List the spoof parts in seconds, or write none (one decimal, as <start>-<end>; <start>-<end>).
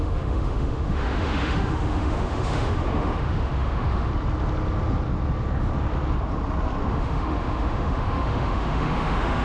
0.0-4.1; 6.9-9.4